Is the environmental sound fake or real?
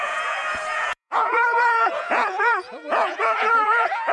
fake